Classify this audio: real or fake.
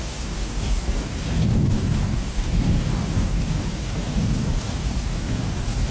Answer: fake